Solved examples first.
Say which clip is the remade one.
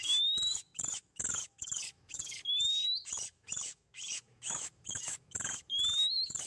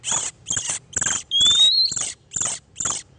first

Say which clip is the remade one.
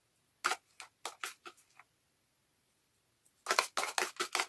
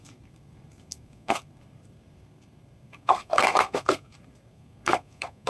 second